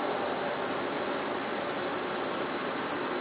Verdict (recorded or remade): recorded